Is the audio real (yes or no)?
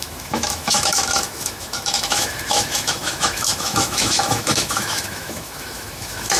no